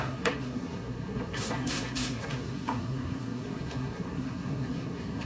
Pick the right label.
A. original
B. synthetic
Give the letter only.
B